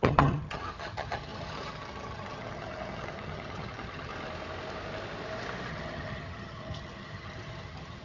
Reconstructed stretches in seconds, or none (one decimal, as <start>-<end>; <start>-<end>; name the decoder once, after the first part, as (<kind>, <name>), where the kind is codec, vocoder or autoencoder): 0.0-4.1 (vocoder, HiFi-GAN); 5.7-8.0